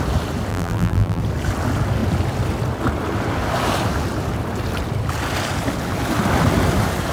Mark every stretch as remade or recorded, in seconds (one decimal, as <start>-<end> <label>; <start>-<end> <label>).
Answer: 0.0-0.5 recorded; 0.5-1.2 remade; 1.2-7.1 recorded